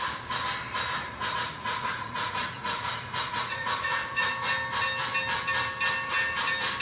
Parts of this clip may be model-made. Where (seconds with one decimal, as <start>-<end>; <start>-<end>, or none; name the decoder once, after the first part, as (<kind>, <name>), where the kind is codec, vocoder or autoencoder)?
1.0-4.3 (vocoder, Vocos)